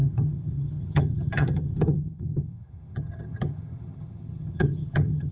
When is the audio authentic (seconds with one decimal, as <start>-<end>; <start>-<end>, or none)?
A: none